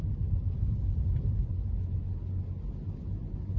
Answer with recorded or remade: recorded